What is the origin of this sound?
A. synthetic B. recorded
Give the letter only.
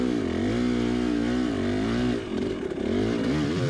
B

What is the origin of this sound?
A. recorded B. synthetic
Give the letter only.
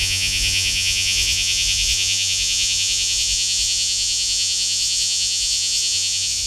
B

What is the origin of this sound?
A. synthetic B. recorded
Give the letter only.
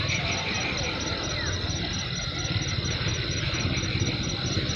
B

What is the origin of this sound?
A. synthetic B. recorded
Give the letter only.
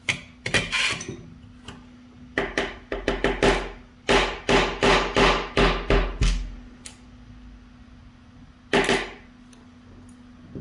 B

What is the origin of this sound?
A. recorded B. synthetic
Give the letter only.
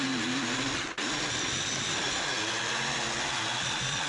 A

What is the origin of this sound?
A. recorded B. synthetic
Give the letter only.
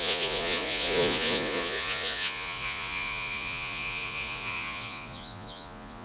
B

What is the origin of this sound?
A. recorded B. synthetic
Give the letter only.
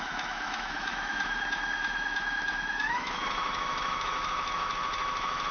B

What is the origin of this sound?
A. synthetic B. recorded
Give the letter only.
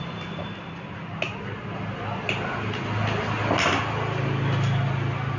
B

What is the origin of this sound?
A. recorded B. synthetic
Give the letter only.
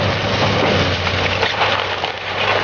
A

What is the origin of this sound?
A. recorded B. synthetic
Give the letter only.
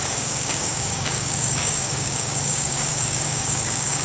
B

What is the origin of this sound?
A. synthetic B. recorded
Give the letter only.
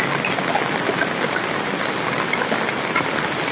B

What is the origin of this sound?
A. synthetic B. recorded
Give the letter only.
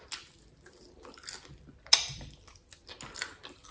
B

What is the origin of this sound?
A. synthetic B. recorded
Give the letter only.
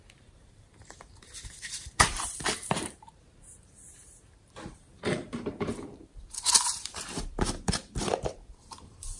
A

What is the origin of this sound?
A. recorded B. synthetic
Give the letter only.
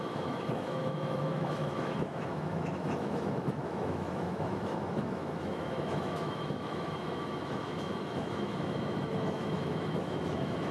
B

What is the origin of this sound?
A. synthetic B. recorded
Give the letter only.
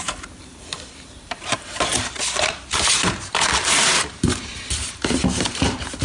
A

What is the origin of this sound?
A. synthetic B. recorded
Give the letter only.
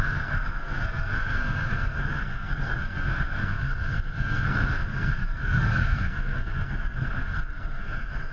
A